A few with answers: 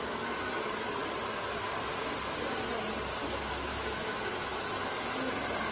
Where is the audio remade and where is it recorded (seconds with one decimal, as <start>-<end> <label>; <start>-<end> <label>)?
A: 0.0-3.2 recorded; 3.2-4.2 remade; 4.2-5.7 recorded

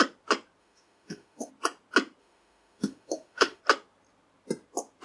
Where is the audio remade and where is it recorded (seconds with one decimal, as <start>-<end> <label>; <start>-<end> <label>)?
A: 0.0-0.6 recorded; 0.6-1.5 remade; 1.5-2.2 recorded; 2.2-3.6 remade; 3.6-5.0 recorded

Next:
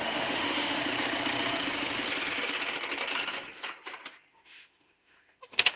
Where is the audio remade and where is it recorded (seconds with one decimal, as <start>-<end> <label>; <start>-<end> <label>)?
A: 0.0-0.8 remade; 0.8-4.3 recorded; 4.3-5.8 remade

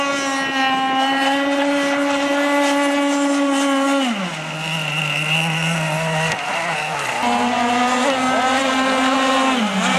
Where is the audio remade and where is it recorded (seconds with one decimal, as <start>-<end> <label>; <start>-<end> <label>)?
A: 0.0-10.0 recorded

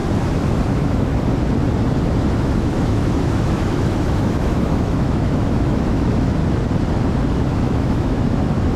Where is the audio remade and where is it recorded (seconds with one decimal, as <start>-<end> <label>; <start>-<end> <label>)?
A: 0.0-0.7 recorded; 0.7-1.1 remade; 1.1-2.3 recorded; 2.3-6.4 remade; 6.4-7.5 recorded; 7.5-8.8 remade